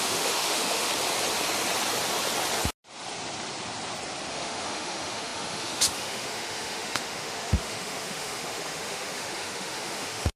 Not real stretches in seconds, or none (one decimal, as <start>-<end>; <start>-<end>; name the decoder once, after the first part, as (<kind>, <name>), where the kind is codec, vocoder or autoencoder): 0.0-0.9 (autoencoder, DAC-VAE); 4.3-10.4